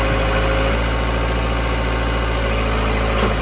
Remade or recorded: recorded